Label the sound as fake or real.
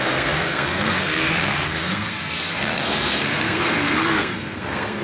fake